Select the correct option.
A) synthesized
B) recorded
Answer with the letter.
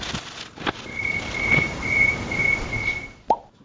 B